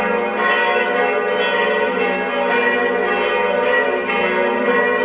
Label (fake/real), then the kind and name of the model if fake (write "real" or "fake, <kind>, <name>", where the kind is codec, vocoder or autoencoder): real